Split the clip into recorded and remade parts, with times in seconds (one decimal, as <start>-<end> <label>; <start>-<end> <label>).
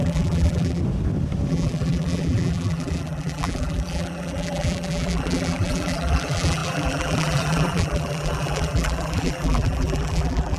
0.0-0.8 remade; 0.8-1.5 recorded; 1.5-10.6 remade